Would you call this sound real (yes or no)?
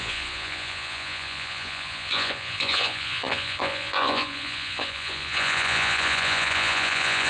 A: no